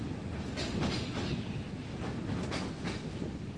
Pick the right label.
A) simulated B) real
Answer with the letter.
B